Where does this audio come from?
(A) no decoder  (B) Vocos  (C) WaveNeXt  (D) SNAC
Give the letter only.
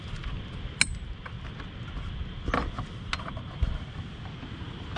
A